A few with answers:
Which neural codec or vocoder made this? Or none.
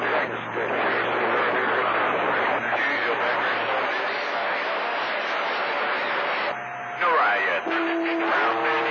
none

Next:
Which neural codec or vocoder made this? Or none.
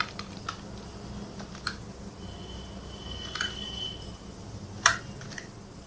none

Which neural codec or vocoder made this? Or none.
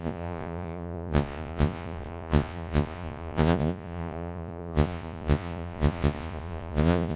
vocoder, Vocos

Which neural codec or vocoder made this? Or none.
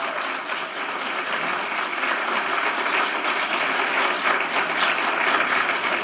none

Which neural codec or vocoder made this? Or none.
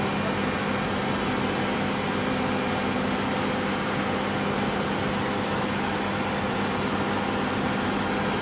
none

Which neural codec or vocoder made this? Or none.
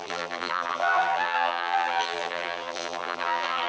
vocoder, BigVGAN v2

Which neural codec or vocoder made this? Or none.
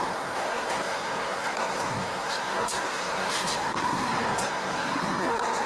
codec, SNAC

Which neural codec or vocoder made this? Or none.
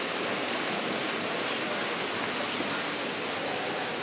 none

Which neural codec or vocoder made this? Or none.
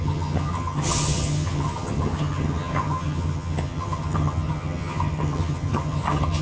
vocoder, HiFi-GAN